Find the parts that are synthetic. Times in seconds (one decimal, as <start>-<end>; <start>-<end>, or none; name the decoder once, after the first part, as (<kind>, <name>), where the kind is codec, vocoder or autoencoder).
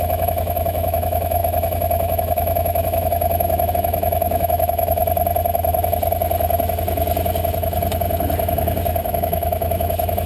0.0-5.0 (autoencoder, DAC-VAE); 9.1-10.3